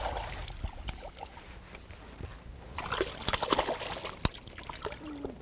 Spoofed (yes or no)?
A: no